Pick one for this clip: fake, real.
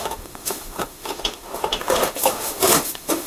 fake